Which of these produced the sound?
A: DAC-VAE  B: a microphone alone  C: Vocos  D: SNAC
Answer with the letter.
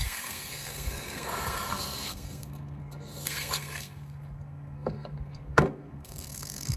D